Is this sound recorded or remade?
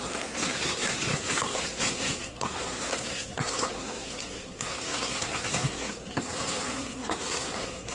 remade